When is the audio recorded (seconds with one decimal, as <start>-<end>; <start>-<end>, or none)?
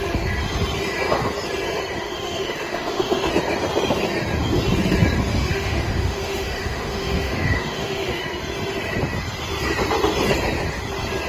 0.0-2.0; 3.3-5.3; 8.2-11.3